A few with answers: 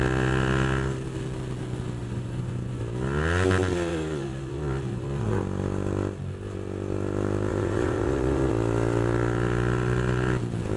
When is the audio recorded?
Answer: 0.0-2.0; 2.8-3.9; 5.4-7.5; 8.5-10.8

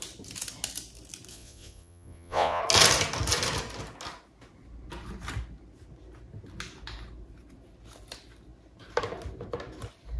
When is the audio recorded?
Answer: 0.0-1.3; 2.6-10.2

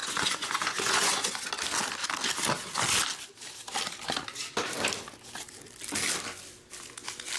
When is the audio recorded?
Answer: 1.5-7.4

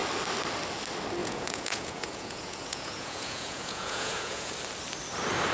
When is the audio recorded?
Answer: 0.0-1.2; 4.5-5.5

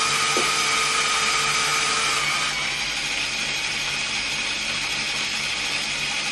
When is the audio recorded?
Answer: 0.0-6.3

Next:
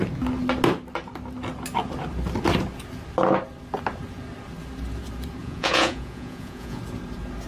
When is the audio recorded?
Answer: 0.0-5.4; 6.8-7.5

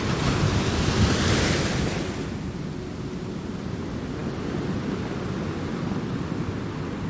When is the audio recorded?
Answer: 0.0-7.1